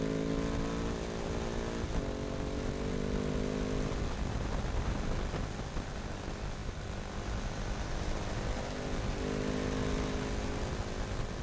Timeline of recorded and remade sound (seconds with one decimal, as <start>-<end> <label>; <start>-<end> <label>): 0.0-11.4 recorded